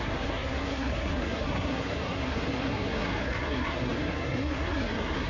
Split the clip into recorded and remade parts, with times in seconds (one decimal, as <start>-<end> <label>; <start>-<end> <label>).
0.0-5.3 remade